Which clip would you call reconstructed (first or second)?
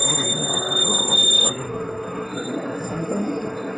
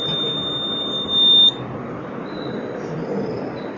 first